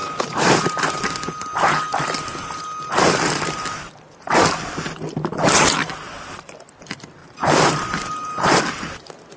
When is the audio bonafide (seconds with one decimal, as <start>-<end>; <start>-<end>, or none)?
1.0-7.2; 8.6-9.4